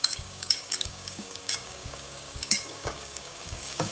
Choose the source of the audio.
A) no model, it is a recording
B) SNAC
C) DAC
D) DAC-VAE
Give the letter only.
C